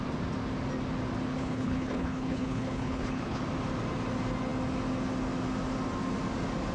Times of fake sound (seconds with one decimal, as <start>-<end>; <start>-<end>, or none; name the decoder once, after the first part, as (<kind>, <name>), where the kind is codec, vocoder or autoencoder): 1.4-3.4 (codec, HILCodec)